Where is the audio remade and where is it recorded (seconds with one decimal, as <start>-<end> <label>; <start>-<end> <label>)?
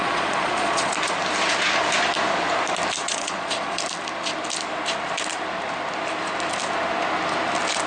0.0-0.9 remade; 0.9-3.0 recorded; 3.0-3.8 remade; 3.8-7.9 recorded